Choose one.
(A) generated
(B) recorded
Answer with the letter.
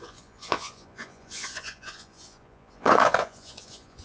A